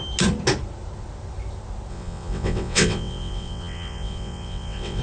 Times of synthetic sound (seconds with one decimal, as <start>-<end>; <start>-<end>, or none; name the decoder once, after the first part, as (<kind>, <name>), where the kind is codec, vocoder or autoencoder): 1.9-5.0 (vocoder, WaveNeXt)